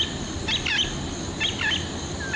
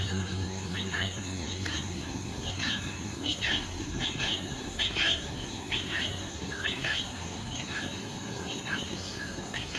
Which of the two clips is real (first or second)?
first